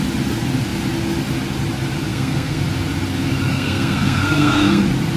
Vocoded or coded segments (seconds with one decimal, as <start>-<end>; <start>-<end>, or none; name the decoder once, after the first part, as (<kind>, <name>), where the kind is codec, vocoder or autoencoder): 2.1-2.6 (codec, SNAC); 3.5-4.8